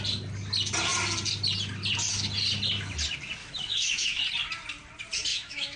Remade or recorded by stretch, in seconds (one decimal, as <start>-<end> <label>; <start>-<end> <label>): 0.0-3.4 recorded; 3.4-4.2 remade; 4.2-5.3 recorded; 5.3-5.8 remade